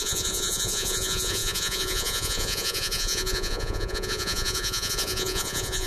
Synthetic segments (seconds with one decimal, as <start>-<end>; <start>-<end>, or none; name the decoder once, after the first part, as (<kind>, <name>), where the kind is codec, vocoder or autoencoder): 0.0-5.9 (vocoder, Vocos)